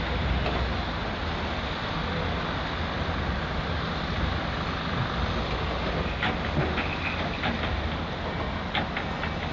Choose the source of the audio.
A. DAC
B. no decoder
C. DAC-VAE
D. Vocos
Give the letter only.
B